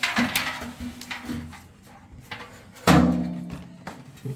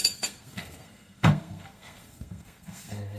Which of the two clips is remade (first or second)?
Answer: second